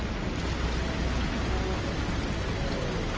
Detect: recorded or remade recorded